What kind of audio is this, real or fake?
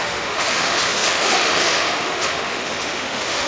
fake